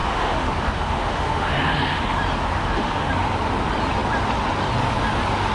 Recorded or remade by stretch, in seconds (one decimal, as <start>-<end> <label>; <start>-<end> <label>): 0.0-2.2 remade; 2.2-2.6 recorded; 2.6-3.1 remade; 3.1-5.5 recorded